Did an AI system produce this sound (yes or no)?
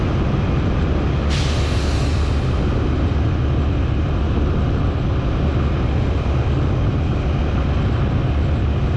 no